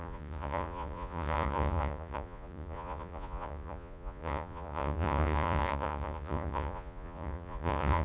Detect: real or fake fake